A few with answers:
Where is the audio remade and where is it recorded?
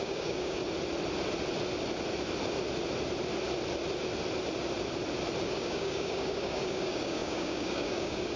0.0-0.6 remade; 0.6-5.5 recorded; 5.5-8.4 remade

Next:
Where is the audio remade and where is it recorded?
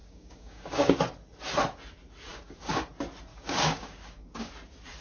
0.0-1.0 remade; 1.0-2.3 recorded; 2.3-2.8 remade; 2.8-3.3 recorded; 3.3-4.5 remade; 4.5-5.0 recorded